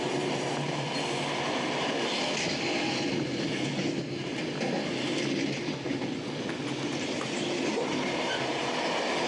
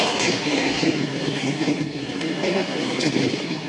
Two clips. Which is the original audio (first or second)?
first